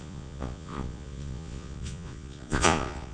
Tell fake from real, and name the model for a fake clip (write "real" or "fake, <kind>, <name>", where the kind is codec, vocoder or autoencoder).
fake, vocoder, Vocos